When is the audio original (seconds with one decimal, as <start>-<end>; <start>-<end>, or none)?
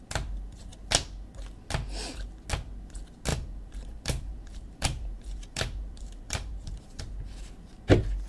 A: 0.0-3.3; 7.0-8.3